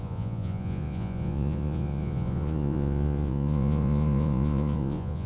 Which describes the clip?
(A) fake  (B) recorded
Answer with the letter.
A